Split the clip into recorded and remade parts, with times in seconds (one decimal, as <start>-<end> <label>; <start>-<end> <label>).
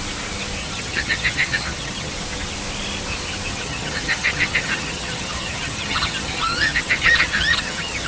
0.0-0.6 recorded; 0.6-2.1 remade; 2.1-3.5 recorded; 3.5-8.1 remade